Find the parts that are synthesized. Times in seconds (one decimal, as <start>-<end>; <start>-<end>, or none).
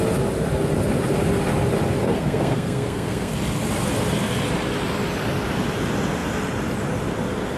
2.0-3.3